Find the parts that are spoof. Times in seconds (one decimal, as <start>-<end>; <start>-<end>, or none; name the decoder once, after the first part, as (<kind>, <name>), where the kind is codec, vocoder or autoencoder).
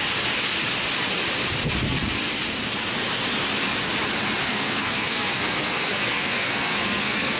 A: 4.4-7.4 (codec, SNAC)